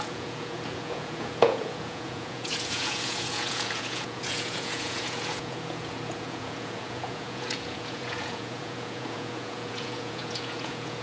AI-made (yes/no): yes